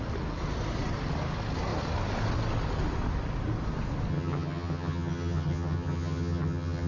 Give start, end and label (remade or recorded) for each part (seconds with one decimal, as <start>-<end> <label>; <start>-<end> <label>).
0.0-4.1 recorded; 4.1-6.9 remade